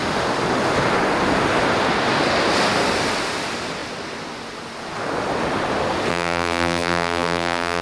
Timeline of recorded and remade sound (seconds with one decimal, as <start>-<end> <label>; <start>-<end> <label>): 0.0-6.1 recorded; 6.1-7.8 remade